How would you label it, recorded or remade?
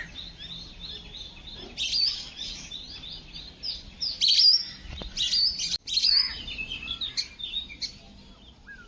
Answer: recorded